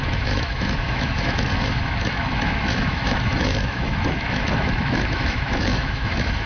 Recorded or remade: remade